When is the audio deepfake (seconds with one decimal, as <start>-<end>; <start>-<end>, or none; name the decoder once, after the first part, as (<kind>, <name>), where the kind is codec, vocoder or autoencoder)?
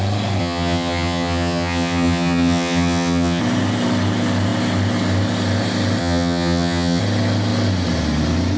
0.4-3.4 (vocoder, HiFi-GAN); 6.0-7.0